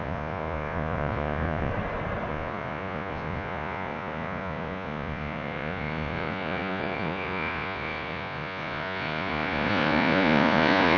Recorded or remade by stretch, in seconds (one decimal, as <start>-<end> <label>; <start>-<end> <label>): 0.0-1.7 remade; 1.7-2.3 recorded; 2.3-11.0 remade